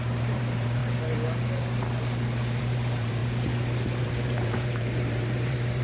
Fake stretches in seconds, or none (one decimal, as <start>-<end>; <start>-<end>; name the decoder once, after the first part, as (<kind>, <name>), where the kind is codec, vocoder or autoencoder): 0.0-0.8 (vocoder, BigVGAN v2); 2.6-3.2; 4.0-5.8